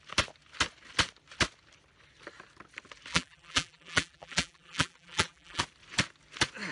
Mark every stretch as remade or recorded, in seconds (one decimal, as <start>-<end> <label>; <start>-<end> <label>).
0.0-3.1 recorded; 3.1-5.6 remade; 5.6-6.7 recorded